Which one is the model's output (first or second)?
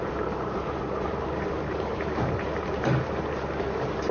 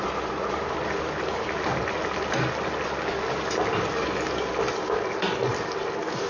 first